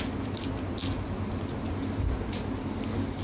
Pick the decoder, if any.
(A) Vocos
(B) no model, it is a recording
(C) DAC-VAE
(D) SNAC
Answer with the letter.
B